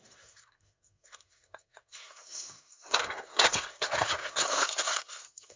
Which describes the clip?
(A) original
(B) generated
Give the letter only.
B